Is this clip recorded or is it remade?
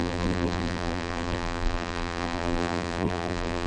remade